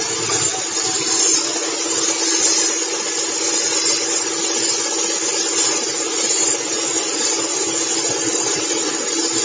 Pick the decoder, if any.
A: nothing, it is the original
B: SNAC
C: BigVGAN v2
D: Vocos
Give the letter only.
A